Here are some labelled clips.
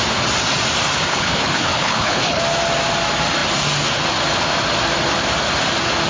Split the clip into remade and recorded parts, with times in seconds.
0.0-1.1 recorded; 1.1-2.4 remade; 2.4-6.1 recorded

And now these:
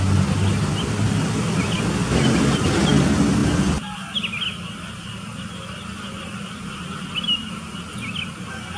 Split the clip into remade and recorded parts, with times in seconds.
0.0-8.8 recorded

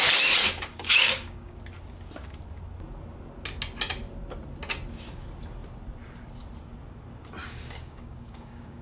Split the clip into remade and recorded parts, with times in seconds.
0.0-0.4 recorded; 0.4-1.6 remade; 1.6-7.4 recorded; 7.4-8.8 remade

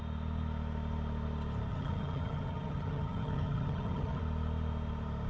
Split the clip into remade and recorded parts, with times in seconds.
0.0-1.7 recorded; 1.7-4.2 remade; 4.2-5.3 recorded